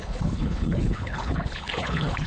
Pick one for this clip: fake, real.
fake